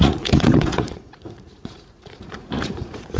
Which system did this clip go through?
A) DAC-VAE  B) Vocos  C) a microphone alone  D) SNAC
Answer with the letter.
B